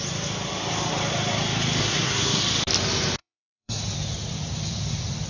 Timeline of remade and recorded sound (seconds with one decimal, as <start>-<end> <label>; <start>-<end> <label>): 0.0-1.8 recorded; 1.8-2.4 remade; 2.4-3.2 recorded; 3.2-3.8 remade; 3.8-5.3 recorded